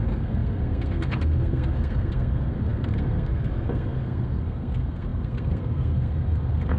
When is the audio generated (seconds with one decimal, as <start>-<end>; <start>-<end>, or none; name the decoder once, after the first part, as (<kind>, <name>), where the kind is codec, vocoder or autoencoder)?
0.0-6.8 (codec, SNAC)